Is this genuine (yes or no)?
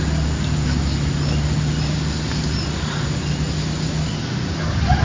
yes